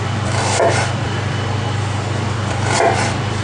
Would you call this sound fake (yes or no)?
yes